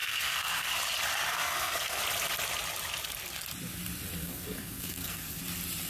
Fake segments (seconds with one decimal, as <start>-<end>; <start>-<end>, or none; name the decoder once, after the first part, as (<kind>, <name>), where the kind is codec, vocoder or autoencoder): 0.0-0.7 (codec, SNAC); 1.3-2.0; 4.2-5.4